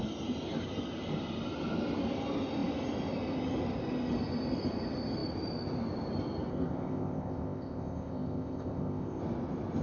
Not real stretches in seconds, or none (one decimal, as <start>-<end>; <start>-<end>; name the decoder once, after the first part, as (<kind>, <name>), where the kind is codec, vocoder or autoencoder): 6.5-9.2 (codec, ZipCodec)